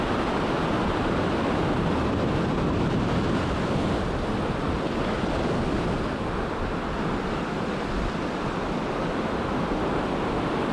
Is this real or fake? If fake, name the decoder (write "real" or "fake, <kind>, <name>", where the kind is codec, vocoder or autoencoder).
real